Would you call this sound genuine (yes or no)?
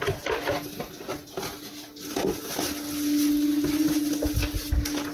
yes